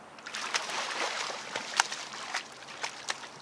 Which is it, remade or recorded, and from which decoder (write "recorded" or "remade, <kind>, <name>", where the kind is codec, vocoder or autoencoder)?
recorded